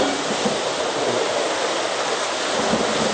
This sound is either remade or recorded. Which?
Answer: recorded